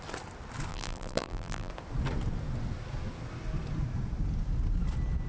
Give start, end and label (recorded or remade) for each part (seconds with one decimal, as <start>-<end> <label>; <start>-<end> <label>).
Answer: 0.0-0.7 recorded; 0.7-1.7 remade; 1.7-5.3 recorded